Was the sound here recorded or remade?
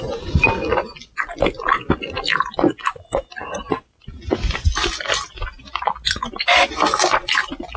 recorded